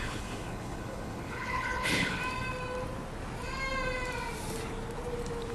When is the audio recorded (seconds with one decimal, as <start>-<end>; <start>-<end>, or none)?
2.2-5.5